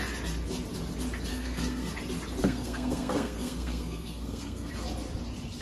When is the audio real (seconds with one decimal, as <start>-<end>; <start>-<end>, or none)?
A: 0.0-1.3; 1.9-2.4; 4.7-5.6